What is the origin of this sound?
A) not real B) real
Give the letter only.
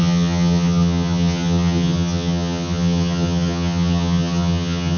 A